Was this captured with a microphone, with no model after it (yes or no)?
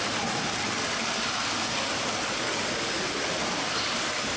yes